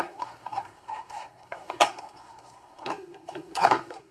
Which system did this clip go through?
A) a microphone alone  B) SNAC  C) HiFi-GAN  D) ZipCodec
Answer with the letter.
B